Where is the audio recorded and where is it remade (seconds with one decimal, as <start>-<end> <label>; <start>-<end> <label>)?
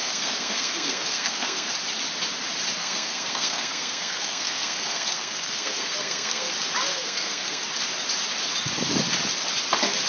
0.0-1.7 remade; 1.7-2.8 recorded; 2.8-6.5 remade; 6.5-6.9 recorded; 6.9-7.6 remade; 7.6-10.1 recorded